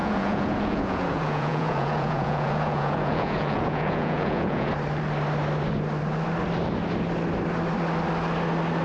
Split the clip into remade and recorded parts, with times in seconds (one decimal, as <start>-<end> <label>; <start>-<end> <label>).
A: 0.0-4.7 remade; 4.7-8.8 recorded